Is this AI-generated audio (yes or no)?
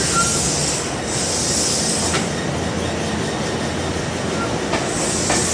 no